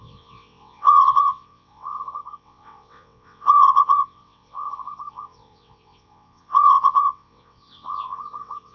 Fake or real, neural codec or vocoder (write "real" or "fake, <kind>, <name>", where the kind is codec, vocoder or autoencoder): fake, vocoder, WaveNeXt